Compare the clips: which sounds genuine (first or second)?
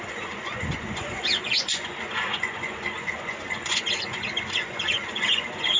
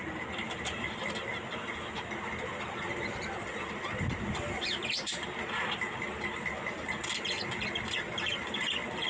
second